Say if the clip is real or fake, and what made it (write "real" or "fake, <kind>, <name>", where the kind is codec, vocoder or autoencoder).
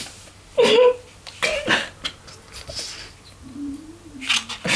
real